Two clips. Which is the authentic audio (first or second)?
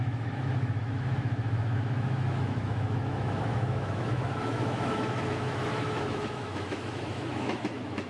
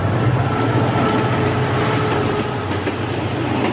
second